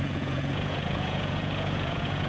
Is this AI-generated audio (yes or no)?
yes